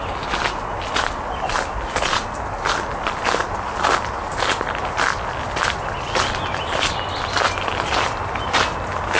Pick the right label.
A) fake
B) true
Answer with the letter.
B